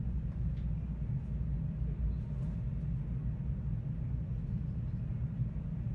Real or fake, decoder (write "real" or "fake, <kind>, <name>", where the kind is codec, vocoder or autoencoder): real